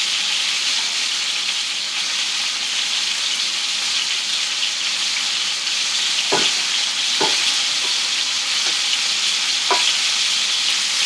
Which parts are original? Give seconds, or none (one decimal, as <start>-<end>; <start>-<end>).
0.0-11.1